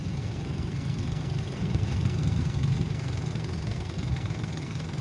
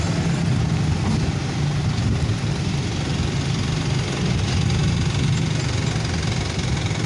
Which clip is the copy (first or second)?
first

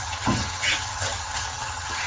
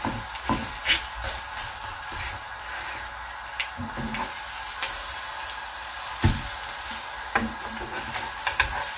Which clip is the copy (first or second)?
first